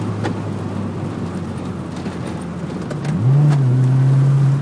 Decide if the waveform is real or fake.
real